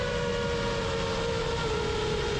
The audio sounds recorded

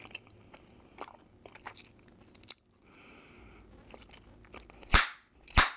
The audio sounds recorded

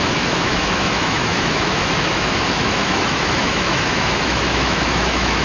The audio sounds remade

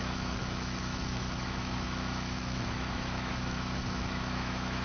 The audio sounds remade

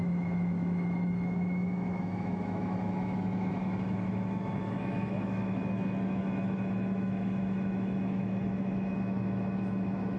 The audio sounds remade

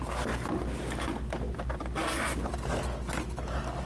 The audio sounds recorded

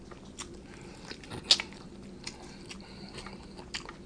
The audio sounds recorded